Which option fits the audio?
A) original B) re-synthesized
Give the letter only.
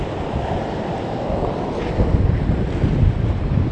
A